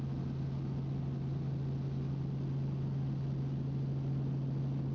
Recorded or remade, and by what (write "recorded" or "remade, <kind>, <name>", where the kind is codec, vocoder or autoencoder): recorded